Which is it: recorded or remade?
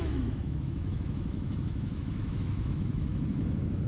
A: remade